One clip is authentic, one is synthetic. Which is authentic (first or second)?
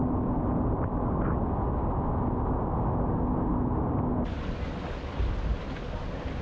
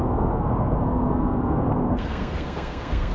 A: first